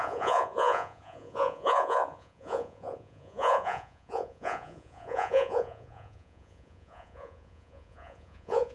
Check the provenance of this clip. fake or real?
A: fake